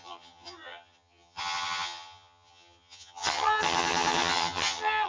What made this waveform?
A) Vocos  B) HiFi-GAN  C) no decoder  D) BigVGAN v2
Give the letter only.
B